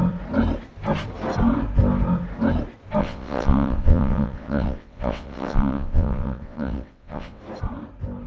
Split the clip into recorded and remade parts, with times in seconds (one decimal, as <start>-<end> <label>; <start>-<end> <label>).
0.0-3.0 recorded; 3.0-7.4 remade; 7.4-8.3 recorded